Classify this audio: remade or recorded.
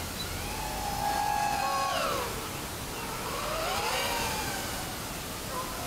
recorded